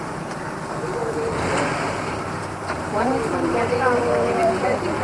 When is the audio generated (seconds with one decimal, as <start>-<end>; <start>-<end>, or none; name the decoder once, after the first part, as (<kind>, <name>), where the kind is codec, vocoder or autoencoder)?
1.0-4.0 (vocoder, BigVGAN v2)